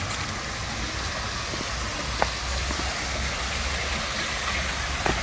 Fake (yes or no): no